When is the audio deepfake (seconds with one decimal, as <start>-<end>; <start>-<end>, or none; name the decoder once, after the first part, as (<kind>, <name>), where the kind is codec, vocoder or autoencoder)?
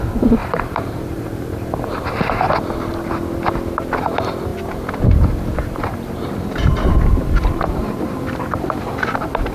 0.4-2.4 (vocoder, BigVGAN v2); 4.5-8.8